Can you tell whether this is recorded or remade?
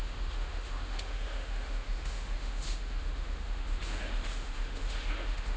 remade